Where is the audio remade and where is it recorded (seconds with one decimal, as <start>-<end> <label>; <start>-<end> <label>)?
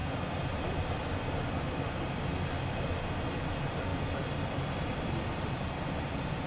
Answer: 0.0-3.9 recorded; 3.9-5.1 remade; 5.1-6.5 recorded